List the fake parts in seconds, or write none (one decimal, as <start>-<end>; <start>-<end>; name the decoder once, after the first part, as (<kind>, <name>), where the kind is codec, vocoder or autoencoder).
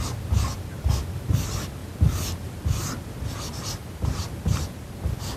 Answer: none